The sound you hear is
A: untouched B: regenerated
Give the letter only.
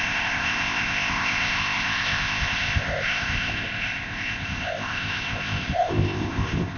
B